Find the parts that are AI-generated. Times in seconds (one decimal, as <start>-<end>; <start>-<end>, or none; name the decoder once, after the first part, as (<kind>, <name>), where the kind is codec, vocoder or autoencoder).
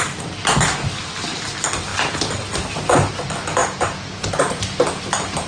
3.6-4.6 (vocoder, Vocos)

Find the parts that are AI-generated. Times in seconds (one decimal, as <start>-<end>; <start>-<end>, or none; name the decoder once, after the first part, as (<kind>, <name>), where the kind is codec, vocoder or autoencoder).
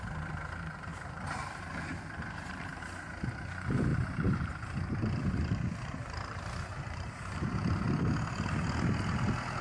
0.9-2.8 (vocoder, BigVGAN v2); 3.9-7.5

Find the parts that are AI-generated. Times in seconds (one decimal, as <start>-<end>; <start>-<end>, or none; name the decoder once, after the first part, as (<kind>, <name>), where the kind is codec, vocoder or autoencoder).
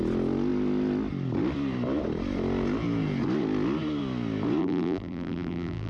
4.6-5.9 (vocoder, BigVGAN v2)